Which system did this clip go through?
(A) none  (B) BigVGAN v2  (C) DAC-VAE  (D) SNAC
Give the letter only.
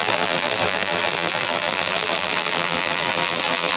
B